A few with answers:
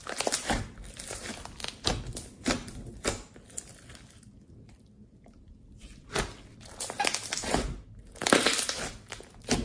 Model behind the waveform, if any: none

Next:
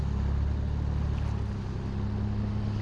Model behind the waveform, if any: none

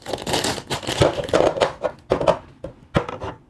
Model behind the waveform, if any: none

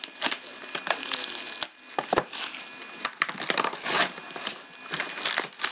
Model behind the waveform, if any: none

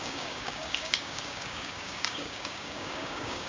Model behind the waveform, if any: codec, DAC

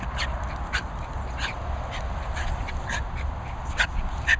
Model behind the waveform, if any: none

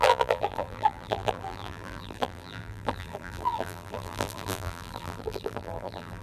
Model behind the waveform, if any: vocoder, BigVGAN v2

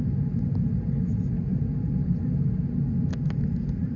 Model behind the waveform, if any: none